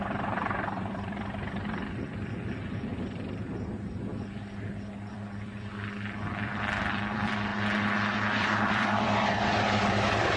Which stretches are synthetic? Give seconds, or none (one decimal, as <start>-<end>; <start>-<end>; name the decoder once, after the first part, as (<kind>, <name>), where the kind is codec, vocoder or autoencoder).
0.0-2.9 (vocoder, BigVGAN v2); 5.1-5.7; 6.3-7.5; 8.4-10.4